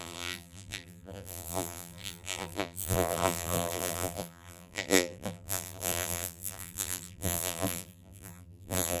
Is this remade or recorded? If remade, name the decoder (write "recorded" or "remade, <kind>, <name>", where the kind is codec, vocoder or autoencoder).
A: remade, vocoder, BigVGAN v2